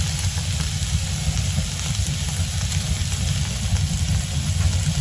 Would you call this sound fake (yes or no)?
no